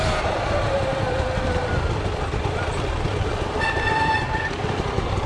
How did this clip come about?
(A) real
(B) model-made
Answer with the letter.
A